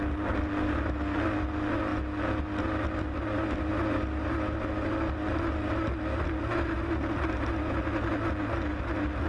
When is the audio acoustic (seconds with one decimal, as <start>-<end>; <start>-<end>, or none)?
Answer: 0.0-9.3